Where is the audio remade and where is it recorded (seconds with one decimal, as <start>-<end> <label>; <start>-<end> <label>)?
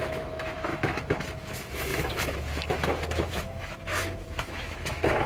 0.0-5.3 remade